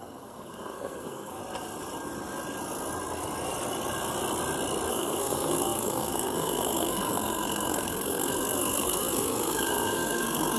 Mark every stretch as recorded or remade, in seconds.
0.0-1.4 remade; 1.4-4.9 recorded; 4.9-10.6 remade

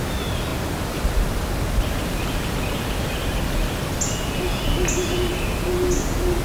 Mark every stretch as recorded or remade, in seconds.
0.0-6.4 recorded

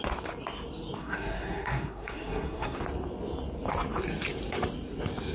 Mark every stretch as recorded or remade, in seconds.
0.0-1.0 recorded; 1.0-2.8 remade; 2.8-5.3 recorded

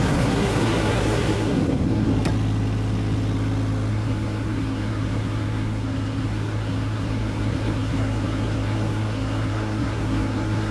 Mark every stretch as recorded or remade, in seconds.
0.0-2.1 remade; 2.1-3.9 recorded; 3.9-10.7 remade